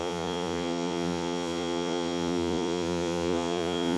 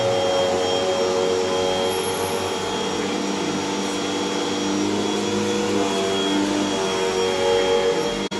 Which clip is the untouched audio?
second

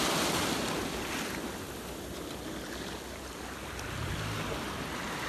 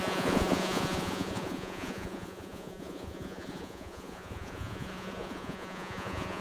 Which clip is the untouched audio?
first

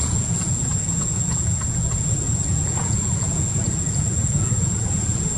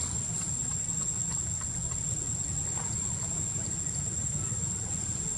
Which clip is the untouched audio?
second